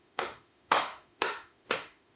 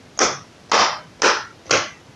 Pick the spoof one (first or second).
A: first